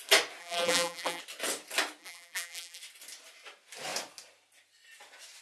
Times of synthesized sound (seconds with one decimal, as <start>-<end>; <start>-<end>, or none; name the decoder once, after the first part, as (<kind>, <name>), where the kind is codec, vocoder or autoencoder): 0.4-1.2 (vocoder, BigVGAN v2); 2.0-2.8